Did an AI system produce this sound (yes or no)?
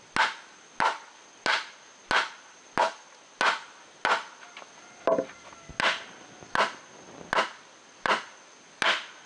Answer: no